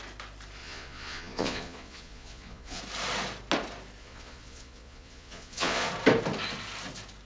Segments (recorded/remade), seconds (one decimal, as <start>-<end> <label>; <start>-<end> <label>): 0.0-0.6 recorded; 0.6-2.8 remade; 2.8-4.0 recorded; 4.0-5.9 remade; 5.9-7.2 recorded